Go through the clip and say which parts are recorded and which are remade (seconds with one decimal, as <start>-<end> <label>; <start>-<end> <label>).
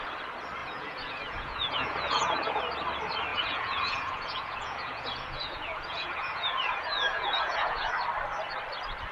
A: 0.0-0.6 recorded; 0.6-2.6 remade; 2.6-3.3 recorded; 3.3-7.9 remade; 7.9-9.1 recorded